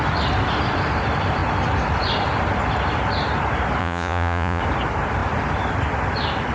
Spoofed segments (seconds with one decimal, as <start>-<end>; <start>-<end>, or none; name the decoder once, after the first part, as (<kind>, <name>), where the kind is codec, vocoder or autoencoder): 3.8-4.6 (vocoder, Vocos)